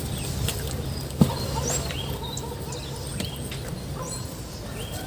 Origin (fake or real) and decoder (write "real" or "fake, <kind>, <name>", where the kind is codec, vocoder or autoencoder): real